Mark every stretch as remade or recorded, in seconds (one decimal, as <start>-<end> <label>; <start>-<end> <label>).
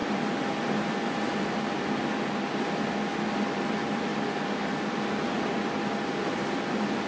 0.0-7.1 recorded